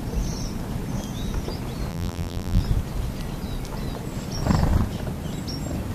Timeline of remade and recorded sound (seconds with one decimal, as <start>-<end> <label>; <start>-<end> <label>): 0.0-1.9 recorded; 1.9-2.6 remade; 2.6-5.9 recorded